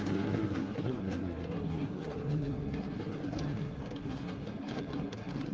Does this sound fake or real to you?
fake